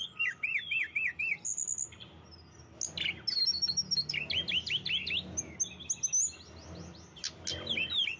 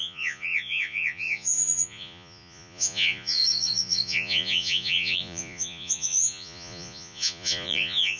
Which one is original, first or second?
first